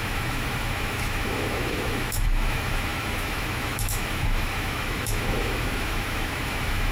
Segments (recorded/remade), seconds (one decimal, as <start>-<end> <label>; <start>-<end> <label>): 0.0-6.9 remade